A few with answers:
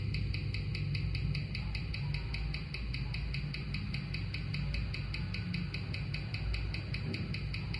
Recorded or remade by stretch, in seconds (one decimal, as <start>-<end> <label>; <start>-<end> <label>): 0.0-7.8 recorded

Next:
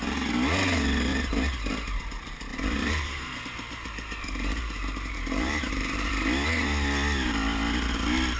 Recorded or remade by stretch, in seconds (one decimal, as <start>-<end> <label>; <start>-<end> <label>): 0.0-1.1 recorded; 1.1-2.0 remade; 2.0-2.5 recorded; 2.5-6.1 remade; 6.1-8.4 recorded

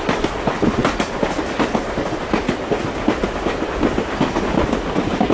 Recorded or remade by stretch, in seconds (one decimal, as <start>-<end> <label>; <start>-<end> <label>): 0.0-5.3 recorded

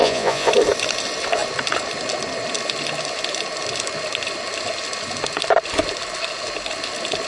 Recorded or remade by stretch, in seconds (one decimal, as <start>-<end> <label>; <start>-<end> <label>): 0.0-0.5 remade; 0.5-7.3 recorded

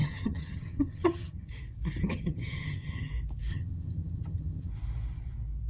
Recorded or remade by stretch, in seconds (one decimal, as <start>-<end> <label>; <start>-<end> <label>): 0.0-1.5 remade; 1.5-2.0 recorded; 2.0-3.1 remade; 3.1-3.5 recorded; 3.5-4.7 remade; 4.7-5.7 recorded